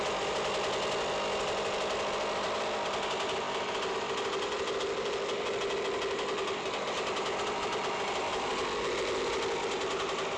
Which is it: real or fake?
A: real